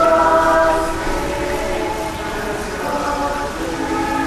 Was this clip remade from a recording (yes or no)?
no